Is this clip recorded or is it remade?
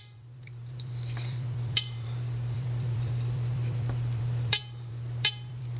remade